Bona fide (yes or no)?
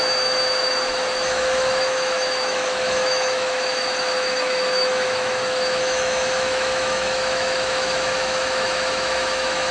no